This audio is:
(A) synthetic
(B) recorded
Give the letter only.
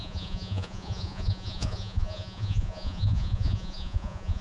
A